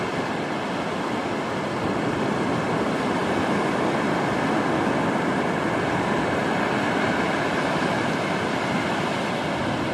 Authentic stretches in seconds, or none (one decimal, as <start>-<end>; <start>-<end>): 3.2-5.2